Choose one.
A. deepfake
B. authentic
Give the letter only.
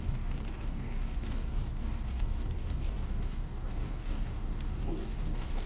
A